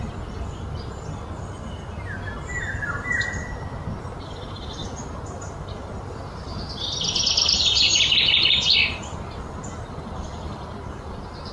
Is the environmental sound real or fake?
real